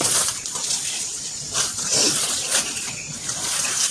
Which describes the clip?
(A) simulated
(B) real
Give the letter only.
A